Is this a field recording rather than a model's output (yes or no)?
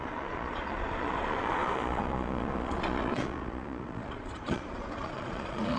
no